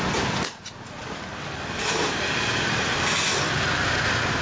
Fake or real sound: fake